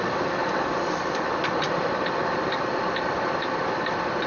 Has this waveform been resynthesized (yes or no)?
yes